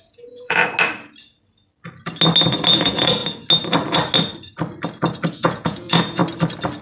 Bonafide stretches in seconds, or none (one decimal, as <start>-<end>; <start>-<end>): 0.6-2.8; 3.2-5.3; 6.2-6.8

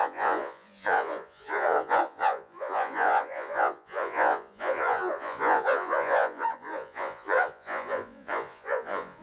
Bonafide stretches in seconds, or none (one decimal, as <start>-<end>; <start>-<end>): none

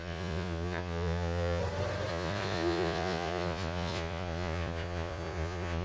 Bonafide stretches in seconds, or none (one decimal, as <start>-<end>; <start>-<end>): 1.6-2.1

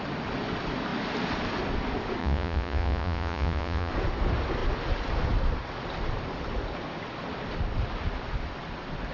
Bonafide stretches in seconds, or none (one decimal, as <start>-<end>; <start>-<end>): 0.0-2.2; 3.9-9.1

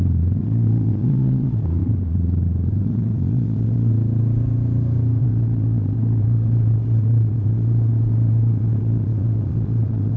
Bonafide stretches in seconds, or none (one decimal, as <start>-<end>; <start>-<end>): 3.9-5.2

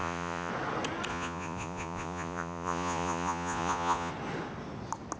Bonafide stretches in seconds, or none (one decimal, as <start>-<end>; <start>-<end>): 0.5-1.1; 4.1-5.2